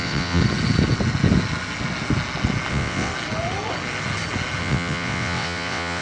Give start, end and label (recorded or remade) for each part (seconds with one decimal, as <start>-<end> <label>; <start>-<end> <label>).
0.0-0.4 remade; 0.4-2.7 recorded; 2.7-3.1 remade; 3.1-4.6 recorded; 4.6-6.0 remade